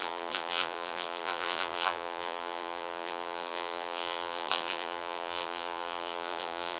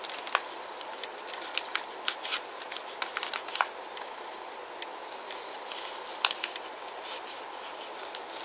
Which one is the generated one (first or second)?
first